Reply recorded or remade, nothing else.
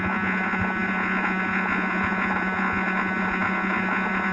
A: remade